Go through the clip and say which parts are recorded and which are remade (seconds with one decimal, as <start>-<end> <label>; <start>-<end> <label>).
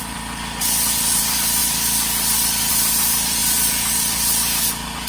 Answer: 0.0-1.6 remade; 1.6-2.7 recorded; 2.7-5.1 remade